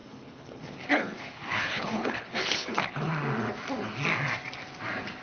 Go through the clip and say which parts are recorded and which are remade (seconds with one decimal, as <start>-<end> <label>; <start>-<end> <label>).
0.0-3.1 remade; 3.1-5.2 recorded